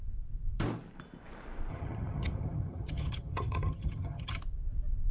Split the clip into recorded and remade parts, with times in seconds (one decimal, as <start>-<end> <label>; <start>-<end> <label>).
0.0-1.7 recorded; 1.7-4.4 remade; 4.4-5.1 recorded